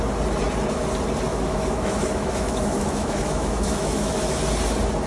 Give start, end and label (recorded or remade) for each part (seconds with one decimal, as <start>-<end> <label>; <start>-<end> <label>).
0.0-1.3 recorded; 1.3-4.4 remade; 4.4-5.1 recorded